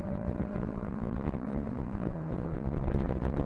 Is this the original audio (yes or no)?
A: no